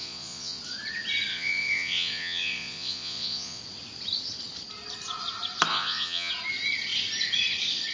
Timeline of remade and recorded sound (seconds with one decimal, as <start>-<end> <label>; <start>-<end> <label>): 0.0-0.6 remade; 0.6-1.3 recorded; 1.3-3.6 remade; 3.6-5.7 recorded; 5.7-6.3 remade; 6.3-7.9 recorded